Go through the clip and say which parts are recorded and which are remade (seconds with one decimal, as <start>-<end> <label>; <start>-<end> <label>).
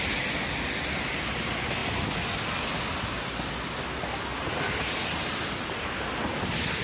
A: 0.0-6.8 recorded